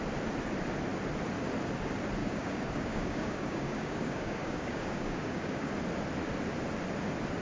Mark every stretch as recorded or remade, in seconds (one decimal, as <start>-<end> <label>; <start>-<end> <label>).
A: 0.0-2.2 recorded; 2.2-5.7 remade; 5.7-7.4 recorded